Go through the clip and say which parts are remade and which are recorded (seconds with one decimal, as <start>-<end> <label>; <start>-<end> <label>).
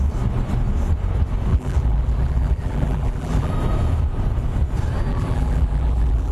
0.0-1.5 recorded; 1.5-3.5 remade; 3.5-5.1 recorded; 5.1-6.3 remade